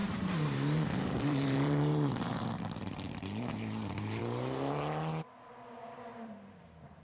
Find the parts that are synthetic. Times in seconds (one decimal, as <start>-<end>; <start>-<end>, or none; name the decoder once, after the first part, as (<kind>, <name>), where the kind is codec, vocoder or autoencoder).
0.0-4.2 (vocoder, BigVGAN v2); 6.1-7.0